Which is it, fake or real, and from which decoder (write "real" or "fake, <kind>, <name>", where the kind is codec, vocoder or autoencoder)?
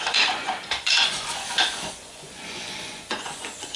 fake, vocoder, Vocos